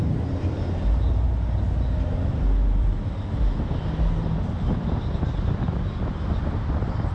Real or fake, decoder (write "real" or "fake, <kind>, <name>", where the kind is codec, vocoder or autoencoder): real